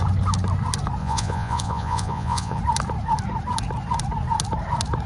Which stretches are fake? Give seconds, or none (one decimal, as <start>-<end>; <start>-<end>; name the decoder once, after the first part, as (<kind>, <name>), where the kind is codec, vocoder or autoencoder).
1.0-2.6 (vocoder, Vocos)